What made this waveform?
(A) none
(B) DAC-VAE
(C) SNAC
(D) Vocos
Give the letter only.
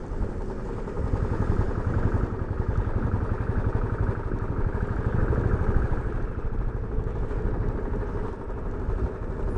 A